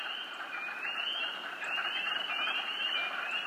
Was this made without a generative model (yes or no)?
yes